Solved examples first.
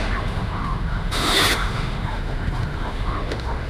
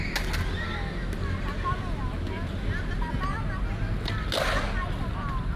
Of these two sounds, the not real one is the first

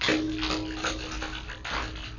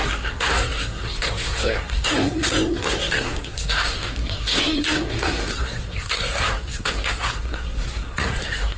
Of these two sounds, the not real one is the second